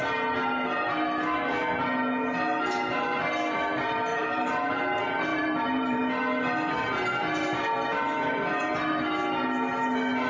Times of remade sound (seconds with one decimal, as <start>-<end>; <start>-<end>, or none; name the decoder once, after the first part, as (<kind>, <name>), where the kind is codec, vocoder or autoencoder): 4.1-4.8 (vocoder, BigVGAN v2); 5.3-6.0